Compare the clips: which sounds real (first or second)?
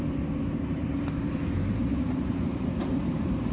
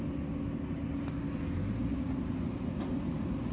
second